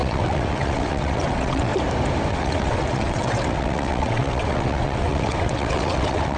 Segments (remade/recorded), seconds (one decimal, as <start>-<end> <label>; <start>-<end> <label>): 0.0-1.7 remade; 1.7-2.3 recorded; 2.3-6.4 remade

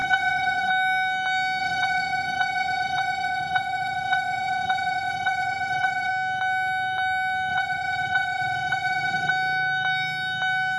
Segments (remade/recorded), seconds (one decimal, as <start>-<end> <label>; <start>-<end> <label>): 0.0-0.7 remade; 0.7-1.6 recorded; 1.6-6.1 remade; 6.1-7.5 recorded; 7.5-9.3 remade; 9.3-10.8 recorded